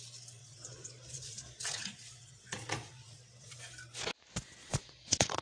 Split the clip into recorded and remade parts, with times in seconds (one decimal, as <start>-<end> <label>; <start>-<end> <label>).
0.0-0.4 recorded; 0.4-3.6 remade; 3.6-4.6 recorded; 4.6-5.4 remade